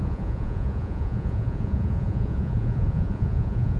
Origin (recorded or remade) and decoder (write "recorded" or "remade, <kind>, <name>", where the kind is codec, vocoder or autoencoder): remade, vocoder, Vocos